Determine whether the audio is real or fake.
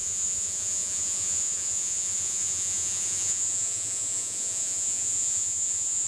fake